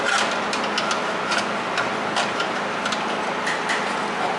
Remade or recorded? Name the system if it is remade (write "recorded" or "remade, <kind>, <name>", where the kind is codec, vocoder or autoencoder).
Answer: recorded